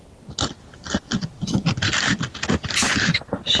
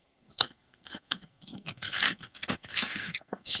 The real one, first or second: first